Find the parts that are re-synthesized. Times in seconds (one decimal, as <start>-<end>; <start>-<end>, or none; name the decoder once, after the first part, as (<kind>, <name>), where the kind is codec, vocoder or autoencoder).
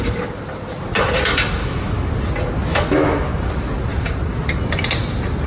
1.6-2.1 (autoencoder, DAC-VAE); 2.7-3.5